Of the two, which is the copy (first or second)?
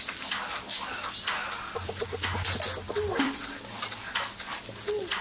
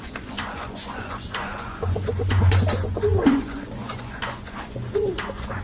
second